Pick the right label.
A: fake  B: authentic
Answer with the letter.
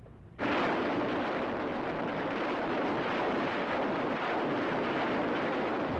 B